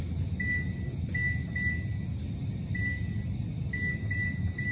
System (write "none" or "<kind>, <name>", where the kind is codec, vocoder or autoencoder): none